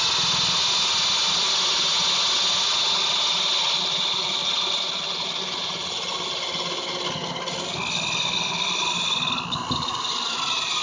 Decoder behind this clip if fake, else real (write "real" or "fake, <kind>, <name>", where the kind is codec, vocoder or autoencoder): real